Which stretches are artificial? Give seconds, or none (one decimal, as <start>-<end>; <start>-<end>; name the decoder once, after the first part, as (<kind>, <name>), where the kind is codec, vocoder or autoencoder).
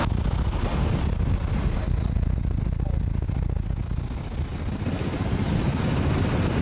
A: none